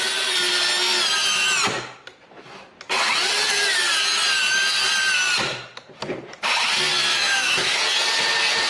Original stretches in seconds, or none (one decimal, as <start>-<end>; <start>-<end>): 0.0-7.1; 7.8-8.7